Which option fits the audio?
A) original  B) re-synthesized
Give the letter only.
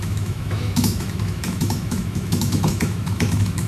B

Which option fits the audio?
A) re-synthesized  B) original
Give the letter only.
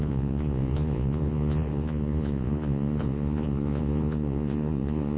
A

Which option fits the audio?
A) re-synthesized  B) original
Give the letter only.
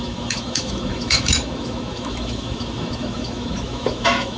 A